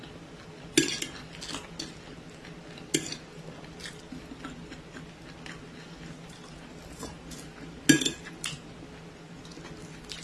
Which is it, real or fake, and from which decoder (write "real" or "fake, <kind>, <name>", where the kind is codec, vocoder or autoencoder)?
real